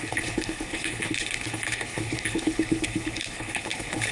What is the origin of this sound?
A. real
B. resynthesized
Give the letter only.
B